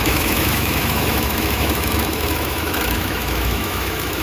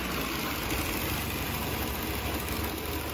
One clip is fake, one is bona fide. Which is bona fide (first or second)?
second